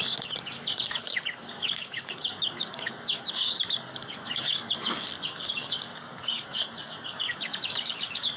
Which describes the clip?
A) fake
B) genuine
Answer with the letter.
A